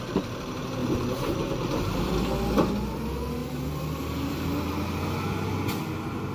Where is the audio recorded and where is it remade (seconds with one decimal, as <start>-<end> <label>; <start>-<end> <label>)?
0.0-0.8 recorded; 0.8-2.1 remade; 2.1-3.4 recorded; 3.4-4.6 remade; 4.6-6.3 recorded